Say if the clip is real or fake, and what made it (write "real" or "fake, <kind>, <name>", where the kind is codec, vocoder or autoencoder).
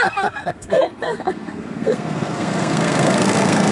fake, codec, SNAC